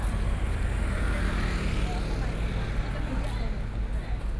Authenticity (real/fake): real